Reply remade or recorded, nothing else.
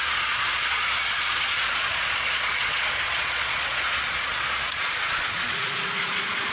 remade